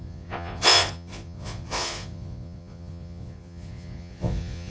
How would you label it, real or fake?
fake